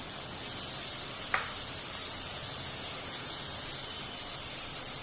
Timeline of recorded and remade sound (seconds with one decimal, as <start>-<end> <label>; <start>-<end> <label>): 0.0-2.3 recorded; 2.3-3.7 remade; 3.7-5.0 recorded